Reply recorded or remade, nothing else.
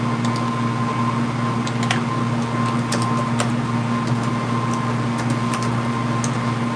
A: recorded